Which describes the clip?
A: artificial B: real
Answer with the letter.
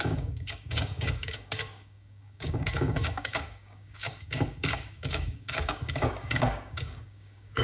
A